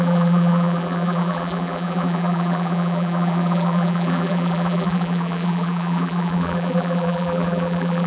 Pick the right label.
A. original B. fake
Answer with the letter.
B